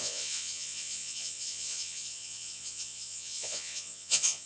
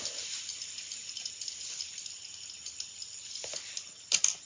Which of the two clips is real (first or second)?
second